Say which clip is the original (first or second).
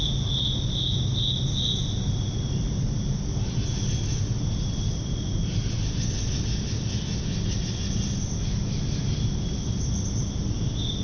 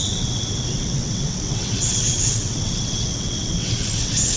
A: first